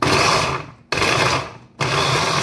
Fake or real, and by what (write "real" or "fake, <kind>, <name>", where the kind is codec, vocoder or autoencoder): real